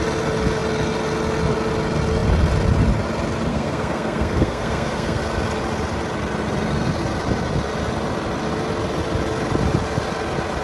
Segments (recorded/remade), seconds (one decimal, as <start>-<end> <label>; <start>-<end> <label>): 0.0-3.5 recorded; 3.5-5.2 remade; 5.2-10.6 recorded

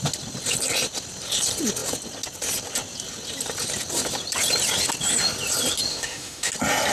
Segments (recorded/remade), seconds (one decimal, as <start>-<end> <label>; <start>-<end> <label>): 0.0-5.9 recorded; 5.9-6.5 remade; 6.5-6.9 recorded

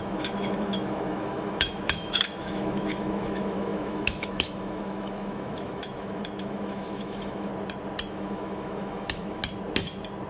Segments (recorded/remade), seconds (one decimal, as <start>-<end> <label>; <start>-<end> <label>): 0.0-7.5 remade; 7.5-8.1 recorded; 8.1-9.4 remade; 9.4-10.3 recorded